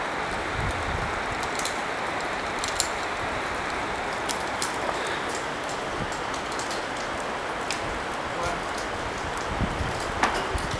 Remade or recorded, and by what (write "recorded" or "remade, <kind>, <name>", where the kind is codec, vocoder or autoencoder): recorded